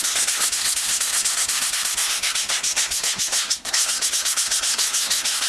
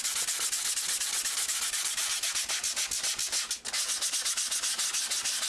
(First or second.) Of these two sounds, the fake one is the first